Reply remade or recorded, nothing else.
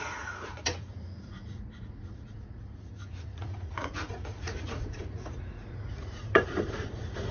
remade